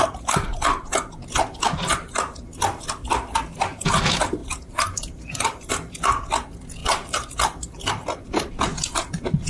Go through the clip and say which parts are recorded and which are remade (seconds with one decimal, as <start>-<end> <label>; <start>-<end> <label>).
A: 0.0-4.4 recorded; 4.4-5.7 remade; 5.7-6.8 recorded; 6.8-8.6 remade; 8.6-9.5 recorded